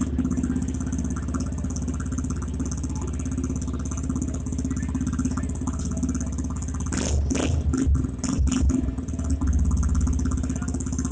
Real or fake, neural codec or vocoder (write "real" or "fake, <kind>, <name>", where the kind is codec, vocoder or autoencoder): real